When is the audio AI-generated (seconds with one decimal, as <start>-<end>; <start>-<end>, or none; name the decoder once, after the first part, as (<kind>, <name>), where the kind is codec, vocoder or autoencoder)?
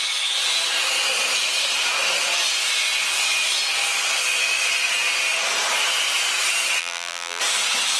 6.8-7.4 (vocoder, BigVGAN v2)